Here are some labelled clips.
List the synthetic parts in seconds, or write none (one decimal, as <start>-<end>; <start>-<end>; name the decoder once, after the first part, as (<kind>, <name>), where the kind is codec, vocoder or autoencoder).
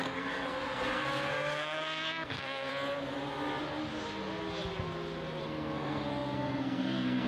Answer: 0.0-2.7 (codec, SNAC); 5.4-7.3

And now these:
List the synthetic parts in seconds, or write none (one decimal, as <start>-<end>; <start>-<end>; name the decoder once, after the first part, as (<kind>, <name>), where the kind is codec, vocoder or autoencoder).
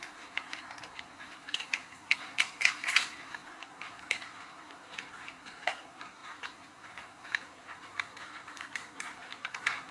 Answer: 0.0-9.9 (codec, SNAC)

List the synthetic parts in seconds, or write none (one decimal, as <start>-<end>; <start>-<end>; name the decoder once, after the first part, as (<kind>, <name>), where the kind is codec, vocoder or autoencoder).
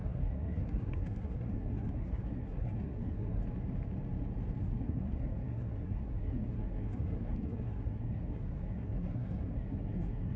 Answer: 0.0-3.4 (codec, SNAC); 4.6-10.4